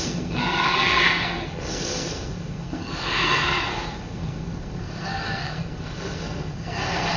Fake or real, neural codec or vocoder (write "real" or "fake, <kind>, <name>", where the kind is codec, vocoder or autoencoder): fake, codec, SNAC